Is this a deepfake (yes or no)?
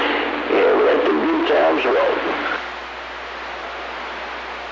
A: no